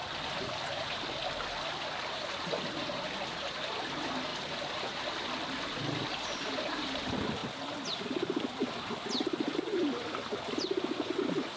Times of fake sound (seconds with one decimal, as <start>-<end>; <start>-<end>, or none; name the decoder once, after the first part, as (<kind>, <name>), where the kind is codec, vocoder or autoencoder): none